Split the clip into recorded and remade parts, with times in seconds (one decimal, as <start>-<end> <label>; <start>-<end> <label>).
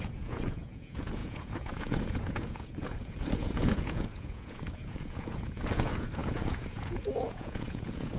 0.0-8.2 remade